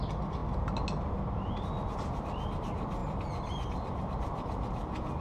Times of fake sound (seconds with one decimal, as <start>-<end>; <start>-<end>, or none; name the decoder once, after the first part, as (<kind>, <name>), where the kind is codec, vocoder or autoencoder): none